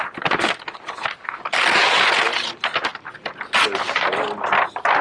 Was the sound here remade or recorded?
recorded